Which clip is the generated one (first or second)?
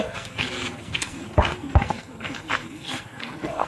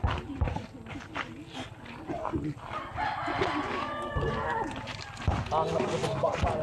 first